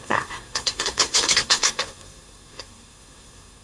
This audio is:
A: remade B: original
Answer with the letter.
A